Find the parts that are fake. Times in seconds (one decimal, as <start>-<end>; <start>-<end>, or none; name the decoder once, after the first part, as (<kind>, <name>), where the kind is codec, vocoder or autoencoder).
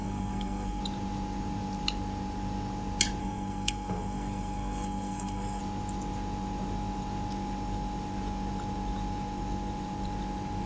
0.0-0.8 (codec, SNAC); 3.2-5.6